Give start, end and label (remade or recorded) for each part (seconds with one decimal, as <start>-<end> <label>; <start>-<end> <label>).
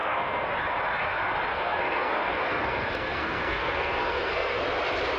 0.0-0.5 remade; 0.5-1.5 recorded; 1.5-4.6 remade; 4.6-5.2 recorded